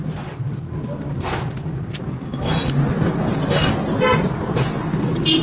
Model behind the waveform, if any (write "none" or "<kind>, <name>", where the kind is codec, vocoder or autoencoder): none